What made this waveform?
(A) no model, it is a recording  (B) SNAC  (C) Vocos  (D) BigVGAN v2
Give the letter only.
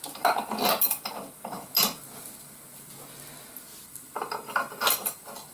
A